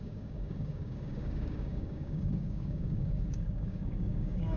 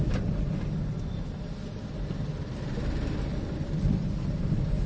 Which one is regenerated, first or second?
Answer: first